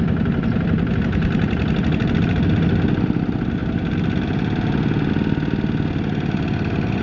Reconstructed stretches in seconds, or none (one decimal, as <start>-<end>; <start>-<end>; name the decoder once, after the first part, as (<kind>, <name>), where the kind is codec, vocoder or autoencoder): none